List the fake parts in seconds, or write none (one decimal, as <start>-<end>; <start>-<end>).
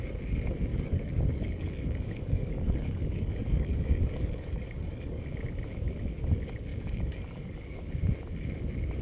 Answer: 0.7-5.2; 6.7-7.8